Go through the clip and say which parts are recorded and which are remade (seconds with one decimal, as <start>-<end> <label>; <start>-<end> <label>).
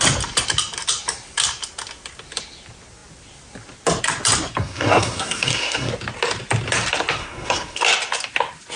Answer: 0.0-4.6 recorded; 4.6-5.9 remade; 5.9-7.2 recorded; 7.2-7.8 remade; 7.8-8.8 recorded